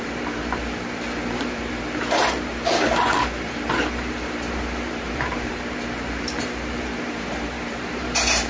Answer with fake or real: fake